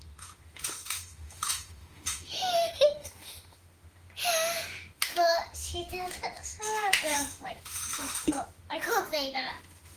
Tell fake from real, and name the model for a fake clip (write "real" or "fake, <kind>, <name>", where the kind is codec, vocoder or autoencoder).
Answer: fake, autoencoder, DAC-VAE